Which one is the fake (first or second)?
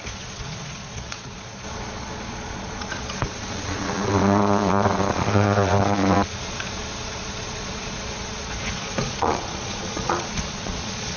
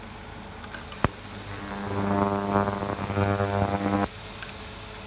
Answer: first